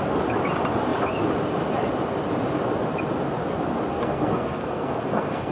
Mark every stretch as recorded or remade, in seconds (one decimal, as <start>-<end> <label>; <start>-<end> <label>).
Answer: 0.0-3.9 recorded; 3.9-5.5 remade